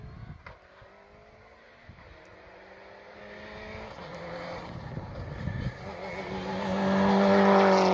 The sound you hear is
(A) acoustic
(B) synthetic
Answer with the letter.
A